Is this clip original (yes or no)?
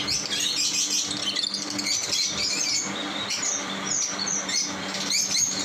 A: yes